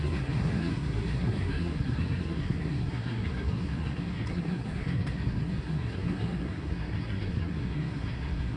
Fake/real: fake